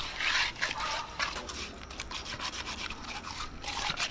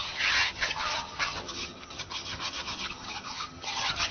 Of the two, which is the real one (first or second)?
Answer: first